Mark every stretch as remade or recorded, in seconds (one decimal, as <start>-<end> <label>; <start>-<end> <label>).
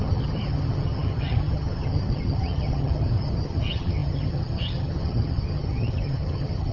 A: 0.0-6.7 remade